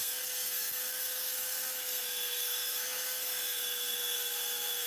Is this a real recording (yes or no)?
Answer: no